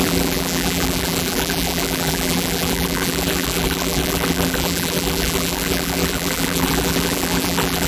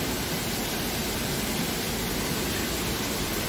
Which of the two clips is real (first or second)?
second